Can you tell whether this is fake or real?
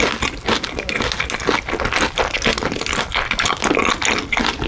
real